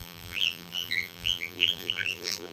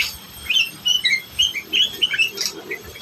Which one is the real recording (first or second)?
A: second